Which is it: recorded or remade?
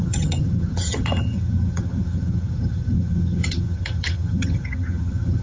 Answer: remade